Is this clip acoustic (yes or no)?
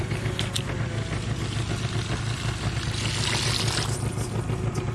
yes